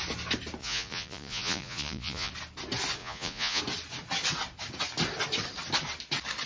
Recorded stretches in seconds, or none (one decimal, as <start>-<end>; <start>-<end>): 0.0-0.6; 2.3-3.0; 3.6-6.5